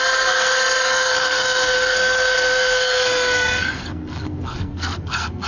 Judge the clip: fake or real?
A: fake